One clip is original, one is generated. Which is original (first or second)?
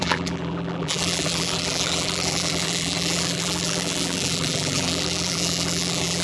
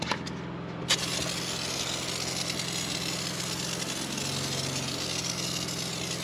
second